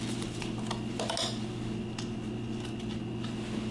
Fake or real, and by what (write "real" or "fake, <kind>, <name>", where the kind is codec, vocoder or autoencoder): real